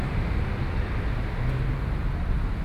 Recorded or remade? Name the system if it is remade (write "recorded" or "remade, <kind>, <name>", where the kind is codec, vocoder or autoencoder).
recorded